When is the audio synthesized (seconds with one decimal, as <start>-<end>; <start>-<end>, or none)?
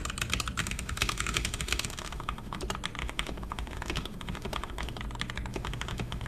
0.6-2.6; 3.0-5.0; 5.5-6.3